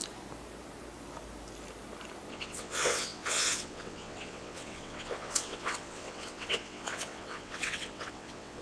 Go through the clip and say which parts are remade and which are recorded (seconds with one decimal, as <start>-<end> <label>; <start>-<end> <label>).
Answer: 0.0-2.3 recorded; 2.3-8.6 remade